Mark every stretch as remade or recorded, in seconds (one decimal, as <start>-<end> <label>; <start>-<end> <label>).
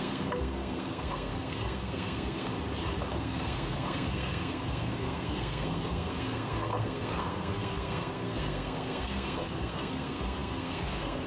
0.0-2.5 remade; 2.5-3.1 recorded; 3.1-11.3 remade